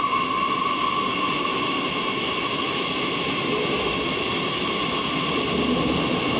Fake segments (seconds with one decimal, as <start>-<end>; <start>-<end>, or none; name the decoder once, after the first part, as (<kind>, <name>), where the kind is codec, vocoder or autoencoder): 1.5-5.3 (autoencoder, DAC-VAE)